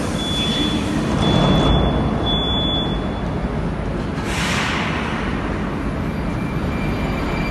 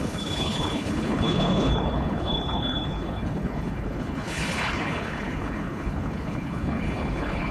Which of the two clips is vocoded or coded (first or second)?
second